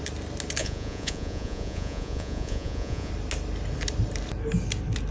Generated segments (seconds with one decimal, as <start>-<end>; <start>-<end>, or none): 0.6-3.1